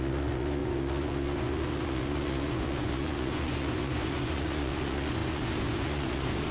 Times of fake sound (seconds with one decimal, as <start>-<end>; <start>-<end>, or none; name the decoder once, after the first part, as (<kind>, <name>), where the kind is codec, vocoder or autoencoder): 0.0-6.5 (vocoder, Vocos)